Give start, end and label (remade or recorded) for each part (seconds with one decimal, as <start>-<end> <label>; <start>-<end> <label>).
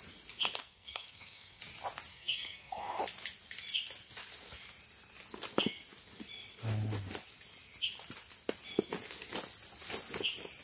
0.0-0.6 recorded; 0.6-1.6 remade; 1.6-2.1 recorded; 2.1-3.0 remade; 3.0-10.6 recorded